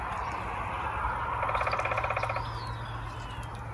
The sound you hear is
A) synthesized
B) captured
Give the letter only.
B